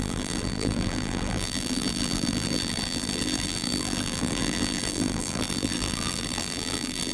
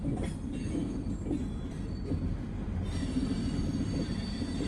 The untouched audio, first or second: second